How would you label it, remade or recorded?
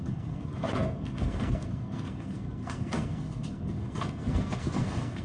remade